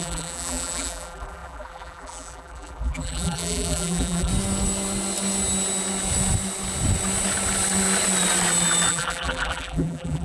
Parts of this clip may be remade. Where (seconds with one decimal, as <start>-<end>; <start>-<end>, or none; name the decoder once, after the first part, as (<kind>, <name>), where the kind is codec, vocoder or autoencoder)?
0.0-4.3 (vocoder, BigVGAN v2); 8.9-10.2